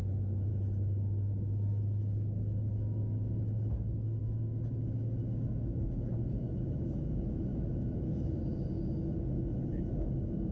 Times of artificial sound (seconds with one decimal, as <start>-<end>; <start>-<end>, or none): 0.0-10.5

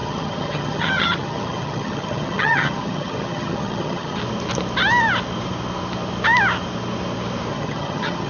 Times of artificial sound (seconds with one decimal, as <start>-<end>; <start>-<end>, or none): 0.0-4.2; 7.5-8.3

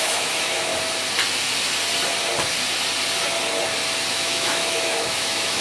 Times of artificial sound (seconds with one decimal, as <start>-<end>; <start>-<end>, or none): 0.0-0.7; 4.1-5.6

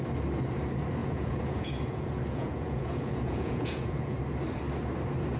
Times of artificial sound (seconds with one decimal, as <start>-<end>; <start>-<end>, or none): 1.0-4.2